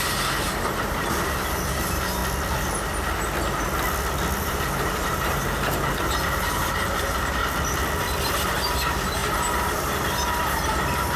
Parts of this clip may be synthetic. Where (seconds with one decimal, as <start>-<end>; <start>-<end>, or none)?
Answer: 0.0-2.2; 4.4-7.4; 8.3-11.2